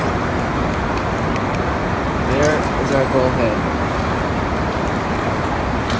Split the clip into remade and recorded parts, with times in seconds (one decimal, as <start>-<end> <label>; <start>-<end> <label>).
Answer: 0.0-6.0 remade